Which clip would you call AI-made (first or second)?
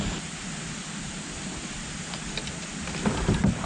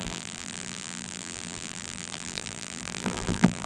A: second